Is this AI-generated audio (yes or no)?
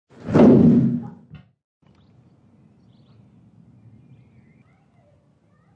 no